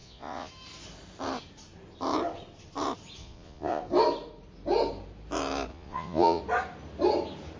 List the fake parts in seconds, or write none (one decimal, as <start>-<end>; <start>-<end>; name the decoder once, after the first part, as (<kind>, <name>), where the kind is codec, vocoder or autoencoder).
0.0-0.5 (vocoder, Vocos); 3.2-3.8; 5.7-6.4